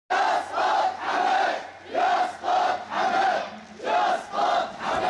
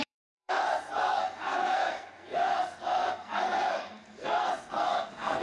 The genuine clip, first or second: first